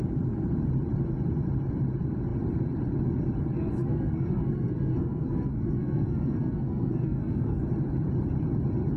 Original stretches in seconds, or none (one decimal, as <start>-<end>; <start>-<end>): 0.0-3.8; 7.6-9.0